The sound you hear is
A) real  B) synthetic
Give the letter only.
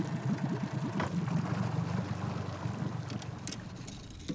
A